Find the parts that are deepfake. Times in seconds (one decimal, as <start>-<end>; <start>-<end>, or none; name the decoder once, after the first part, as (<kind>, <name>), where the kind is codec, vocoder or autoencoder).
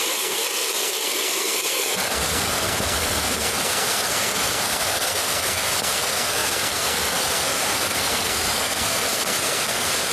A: 0.0-10.1 (codec, SNAC)